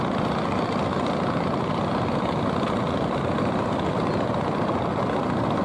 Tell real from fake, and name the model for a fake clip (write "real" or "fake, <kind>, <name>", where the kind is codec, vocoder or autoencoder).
real